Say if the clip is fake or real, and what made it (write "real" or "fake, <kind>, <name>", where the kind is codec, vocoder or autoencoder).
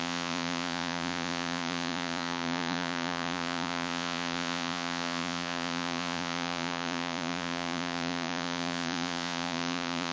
fake, vocoder, Vocos